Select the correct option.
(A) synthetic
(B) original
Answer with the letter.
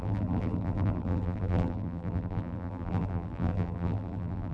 A